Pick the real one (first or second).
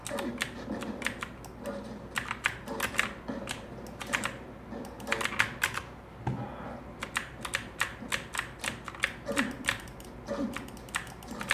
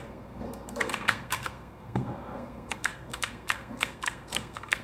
first